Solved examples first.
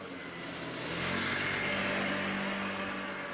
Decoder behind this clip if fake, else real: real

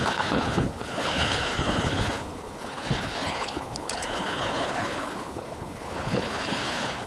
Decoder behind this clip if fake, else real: fake, codec, HILCodec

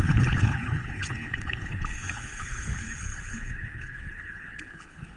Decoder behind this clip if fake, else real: fake, codec, HILCodec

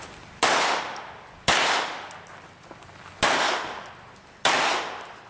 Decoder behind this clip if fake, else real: real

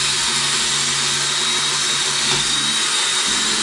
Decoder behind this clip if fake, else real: real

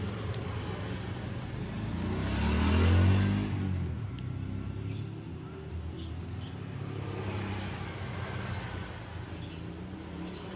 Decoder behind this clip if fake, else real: real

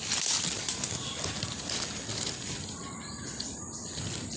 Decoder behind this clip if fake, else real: real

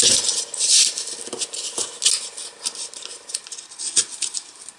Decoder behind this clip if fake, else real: real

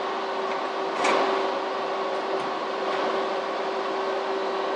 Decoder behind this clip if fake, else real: real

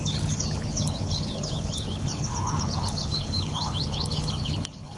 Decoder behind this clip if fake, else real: fake, codec, HILCodec